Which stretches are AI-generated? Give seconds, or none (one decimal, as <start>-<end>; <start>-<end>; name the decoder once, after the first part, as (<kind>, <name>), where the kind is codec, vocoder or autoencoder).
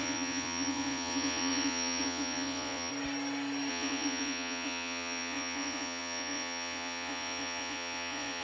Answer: 0.0-2.9 (vocoder, Vocos); 3.7-8.4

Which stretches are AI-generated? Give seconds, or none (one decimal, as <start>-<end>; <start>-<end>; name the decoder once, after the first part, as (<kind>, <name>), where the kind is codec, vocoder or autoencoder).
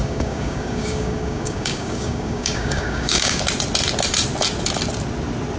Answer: 0.0-3.4 (codec, DAC)